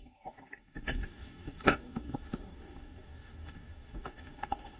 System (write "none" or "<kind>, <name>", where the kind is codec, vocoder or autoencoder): codec, DAC